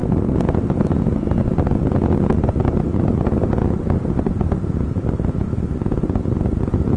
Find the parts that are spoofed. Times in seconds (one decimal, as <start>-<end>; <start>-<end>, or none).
4.2-7.0